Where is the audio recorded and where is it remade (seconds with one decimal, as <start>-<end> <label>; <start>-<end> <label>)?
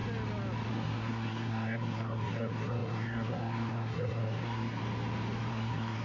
0.0-0.7 recorded; 0.7-4.8 remade; 4.8-5.5 recorded; 5.5-6.0 remade